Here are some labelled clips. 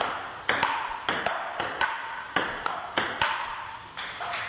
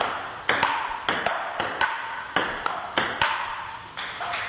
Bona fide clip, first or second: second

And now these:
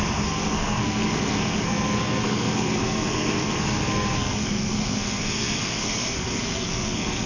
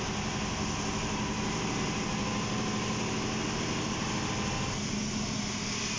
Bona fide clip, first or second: second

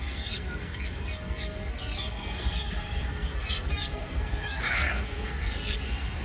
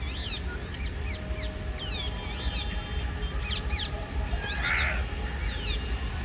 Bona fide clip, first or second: second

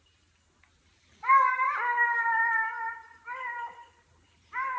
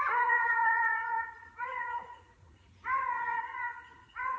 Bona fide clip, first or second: first